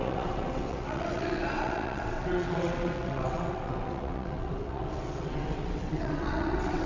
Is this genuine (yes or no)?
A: no